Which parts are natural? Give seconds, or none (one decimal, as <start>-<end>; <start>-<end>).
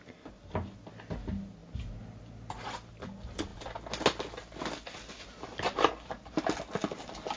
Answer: 0.0-7.4